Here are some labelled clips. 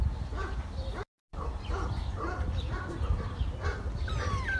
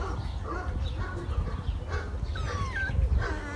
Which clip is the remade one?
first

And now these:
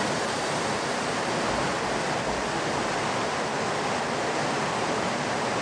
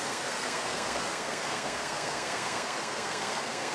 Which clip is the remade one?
second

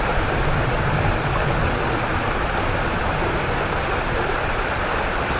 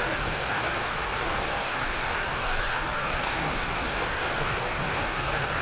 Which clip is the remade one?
second